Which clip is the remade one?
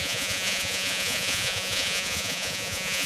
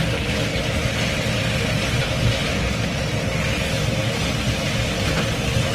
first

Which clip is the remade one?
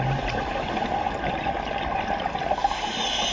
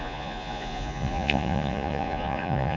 second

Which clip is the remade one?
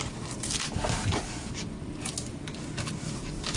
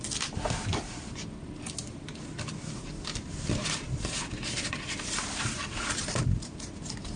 second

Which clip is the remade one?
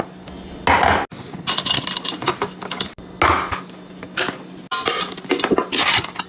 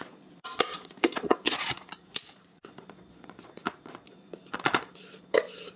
second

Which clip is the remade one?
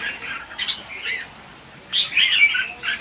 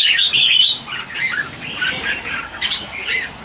second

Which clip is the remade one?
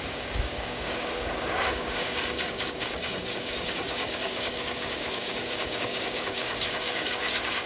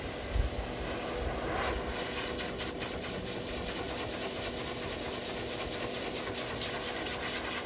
first